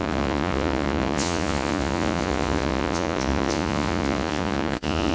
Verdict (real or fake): fake